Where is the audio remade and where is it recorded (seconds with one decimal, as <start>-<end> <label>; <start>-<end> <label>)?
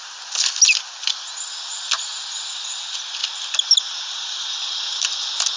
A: 0.0-5.6 recorded